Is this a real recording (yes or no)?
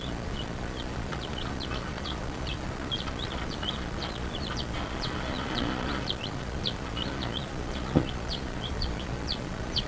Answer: no